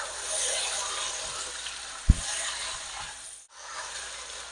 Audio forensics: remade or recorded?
recorded